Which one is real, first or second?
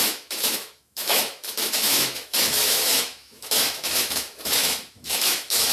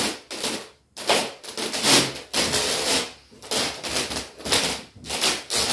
second